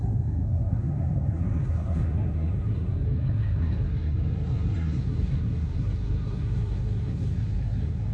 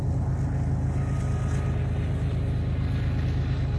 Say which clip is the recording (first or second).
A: second